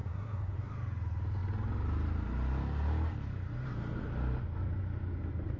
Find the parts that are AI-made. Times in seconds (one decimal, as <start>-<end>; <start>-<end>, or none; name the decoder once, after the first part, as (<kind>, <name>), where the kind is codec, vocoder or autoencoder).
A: 0.0-0.7 (codec, SNAC)